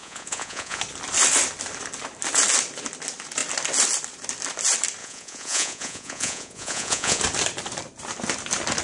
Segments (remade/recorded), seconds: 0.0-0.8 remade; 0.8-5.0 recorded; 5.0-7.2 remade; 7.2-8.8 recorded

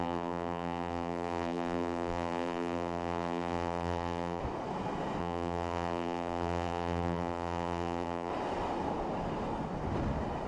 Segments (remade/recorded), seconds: 0.0-4.4 remade; 4.4-5.2 recorded; 5.2-8.3 remade; 8.3-10.5 recorded

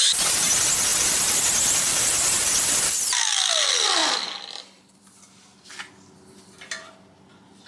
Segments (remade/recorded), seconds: 0.0-0.9 recorded; 0.9-2.0 remade; 2.0-7.7 recorded

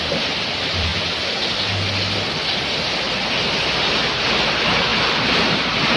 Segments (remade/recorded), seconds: 0.0-0.9 remade; 0.9-4.5 recorded; 4.5-6.0 remade

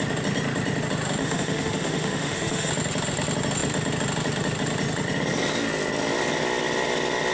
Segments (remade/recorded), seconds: 0.0-1.2 recorded; 1.2-2.7 remade; 2.7-7.3 recorded

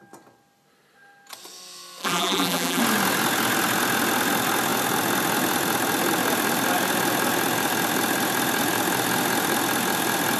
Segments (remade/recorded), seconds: 0.0-2.0 recorded; 2.0-2.8 remade; 2.8-10.4 recorded